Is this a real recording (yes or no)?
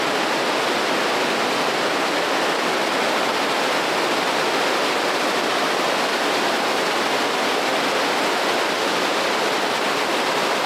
yes